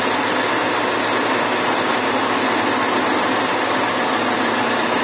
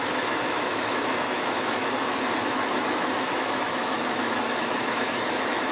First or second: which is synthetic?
second